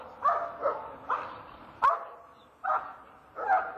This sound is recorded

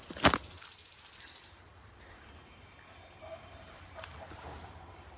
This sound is remade